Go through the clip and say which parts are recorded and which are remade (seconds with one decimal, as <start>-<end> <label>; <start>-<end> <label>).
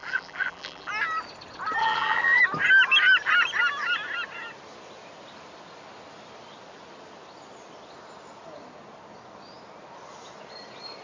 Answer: 0.0-0.9 remade; 0.9-1.8 recorded; 1.8-2.4 remade; 2.4-11.0 recorded